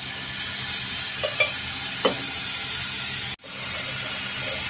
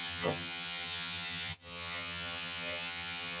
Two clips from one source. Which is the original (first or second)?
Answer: first